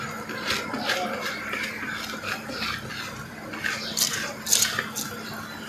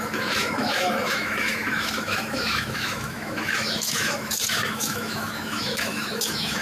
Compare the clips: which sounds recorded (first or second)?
first